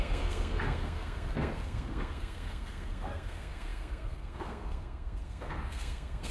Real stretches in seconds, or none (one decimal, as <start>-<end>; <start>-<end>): none